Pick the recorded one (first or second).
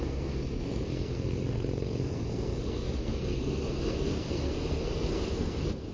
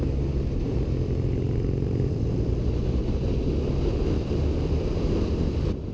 second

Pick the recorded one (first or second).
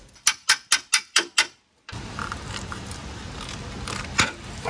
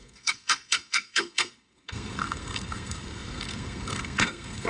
first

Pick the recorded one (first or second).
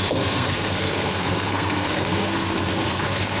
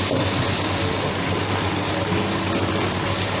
second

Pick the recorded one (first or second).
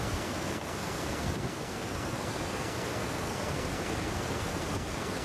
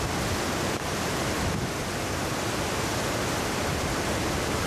second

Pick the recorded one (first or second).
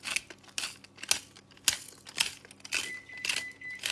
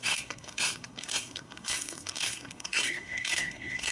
first